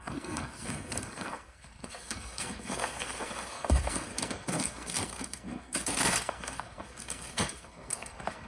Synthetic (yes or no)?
yes